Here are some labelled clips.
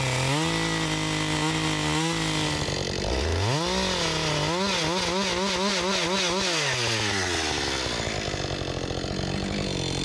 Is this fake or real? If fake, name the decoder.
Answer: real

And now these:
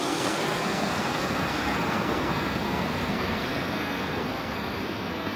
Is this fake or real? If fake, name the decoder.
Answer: fake, codec, SNAC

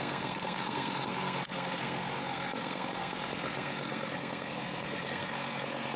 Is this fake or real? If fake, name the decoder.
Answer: fake, codec, SNAC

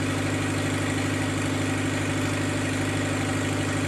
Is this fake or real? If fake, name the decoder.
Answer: real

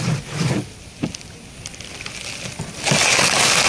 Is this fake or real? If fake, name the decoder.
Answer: real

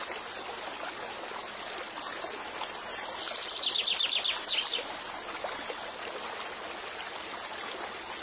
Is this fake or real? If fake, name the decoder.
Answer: real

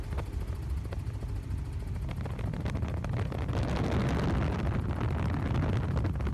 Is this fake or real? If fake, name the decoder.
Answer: real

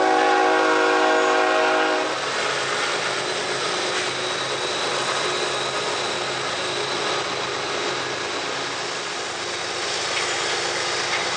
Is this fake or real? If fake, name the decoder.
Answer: real